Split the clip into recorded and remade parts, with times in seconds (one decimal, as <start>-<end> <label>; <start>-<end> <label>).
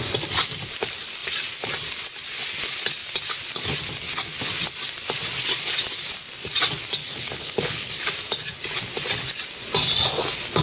0.0-7.0 recorded; 7.0-7.9 remade; 7.9-10.6 recorded